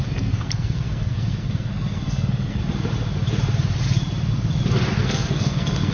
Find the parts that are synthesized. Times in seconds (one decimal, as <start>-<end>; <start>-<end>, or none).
0.0-2.6; 5.0-5.9